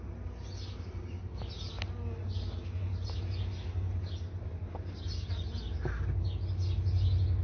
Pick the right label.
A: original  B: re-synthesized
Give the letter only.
A